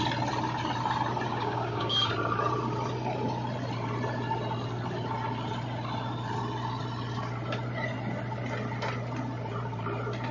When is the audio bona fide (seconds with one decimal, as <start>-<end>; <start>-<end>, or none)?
0.0-1.3; 2.1-10.3